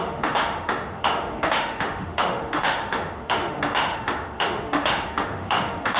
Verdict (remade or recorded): remade